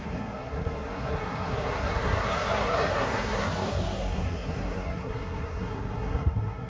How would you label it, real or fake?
fake